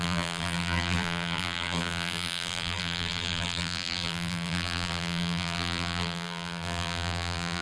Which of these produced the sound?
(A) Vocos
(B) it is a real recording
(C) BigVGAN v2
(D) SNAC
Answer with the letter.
C